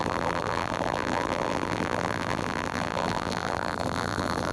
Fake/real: fake